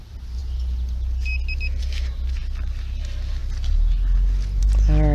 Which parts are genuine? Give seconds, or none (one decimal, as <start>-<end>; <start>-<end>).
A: 0.0-5.1